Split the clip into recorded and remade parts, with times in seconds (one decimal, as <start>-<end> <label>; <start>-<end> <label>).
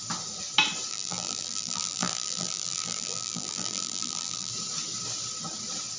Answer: 0.0-0.9 recorded; 0.9-4.5 remade; 4.5-6.0 recorded